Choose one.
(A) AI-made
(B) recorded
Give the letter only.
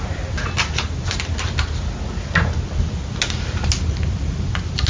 B